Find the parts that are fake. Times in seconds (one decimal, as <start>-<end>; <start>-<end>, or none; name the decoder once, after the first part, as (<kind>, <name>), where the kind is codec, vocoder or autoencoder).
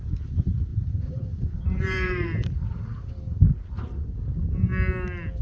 0.7-3.5 (vocoder, BigVGAN v2)